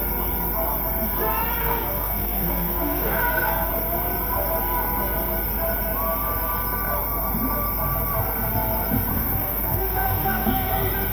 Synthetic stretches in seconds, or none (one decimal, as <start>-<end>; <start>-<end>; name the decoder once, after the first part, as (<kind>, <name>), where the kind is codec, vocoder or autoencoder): 1.6-3.7 (codec, SNAC); 9.1-10.7